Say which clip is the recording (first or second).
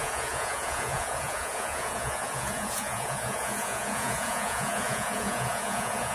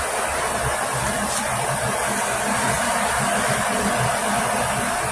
second